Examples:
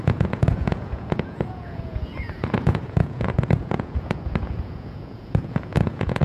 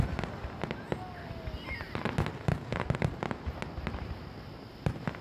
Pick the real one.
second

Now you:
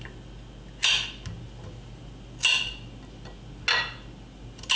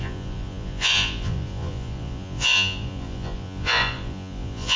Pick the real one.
first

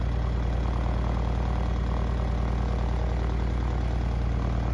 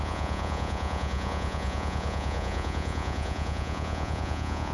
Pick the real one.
first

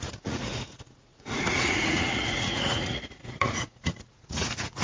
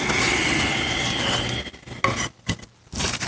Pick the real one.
second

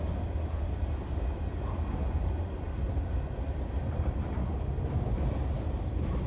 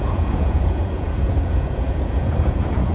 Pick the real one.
first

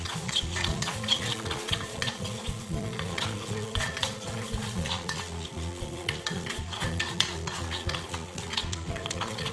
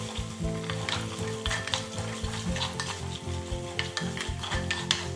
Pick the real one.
second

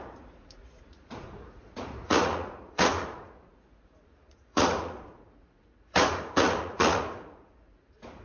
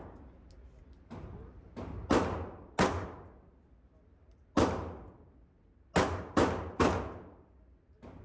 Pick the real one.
second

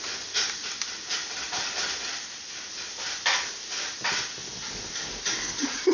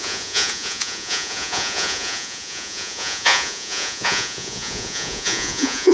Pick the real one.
first